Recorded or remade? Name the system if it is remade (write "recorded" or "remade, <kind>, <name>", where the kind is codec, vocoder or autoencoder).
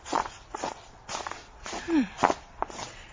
remade, vocoder, Vocos